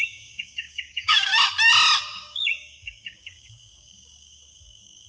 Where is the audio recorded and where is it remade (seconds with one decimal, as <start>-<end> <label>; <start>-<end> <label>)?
0.0-1.3 remade; 1.3-2.0 recorded; 2.0-5.1 remade

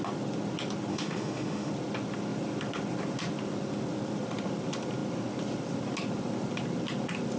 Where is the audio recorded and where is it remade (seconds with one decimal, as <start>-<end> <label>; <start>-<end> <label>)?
0.0-0.9 recorded; 0.9-1.7 remade; 1.7-7.4 recorded

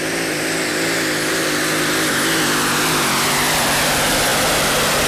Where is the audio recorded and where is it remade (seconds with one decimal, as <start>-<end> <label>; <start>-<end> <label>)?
0.0-5.1 recorded

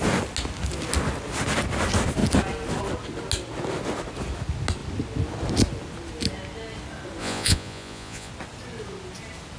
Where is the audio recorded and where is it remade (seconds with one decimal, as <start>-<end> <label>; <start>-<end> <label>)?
0.0-7.2 recorded; 7.2-8.3 remade; 8.3-9.6 recorded

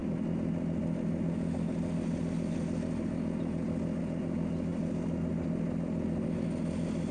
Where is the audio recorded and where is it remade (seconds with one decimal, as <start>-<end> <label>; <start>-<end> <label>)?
0.0-7.1 recorded